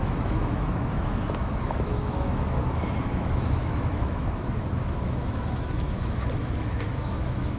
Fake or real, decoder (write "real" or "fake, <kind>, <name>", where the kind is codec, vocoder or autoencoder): fake, autoencoder, DAC-VAE